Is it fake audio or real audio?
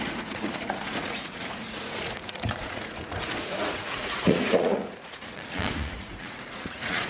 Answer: fake